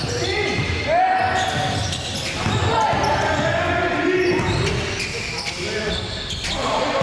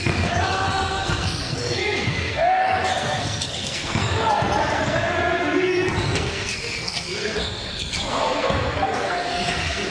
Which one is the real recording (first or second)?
first